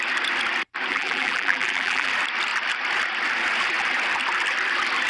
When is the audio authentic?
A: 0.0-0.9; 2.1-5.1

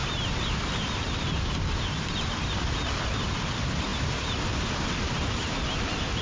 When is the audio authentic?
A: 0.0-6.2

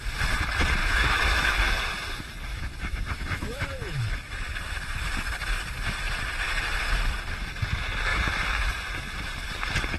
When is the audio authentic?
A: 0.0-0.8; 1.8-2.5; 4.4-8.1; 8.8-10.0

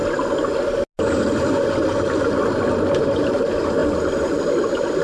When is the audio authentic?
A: 0.0-5.0

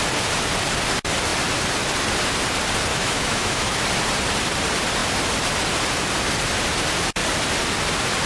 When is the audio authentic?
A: 0.0-2.9; 3.8-8.3